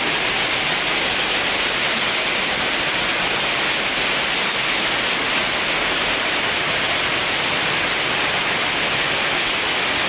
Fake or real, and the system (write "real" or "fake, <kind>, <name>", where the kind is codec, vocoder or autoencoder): real